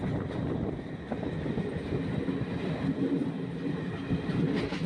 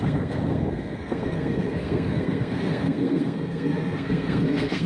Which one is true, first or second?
first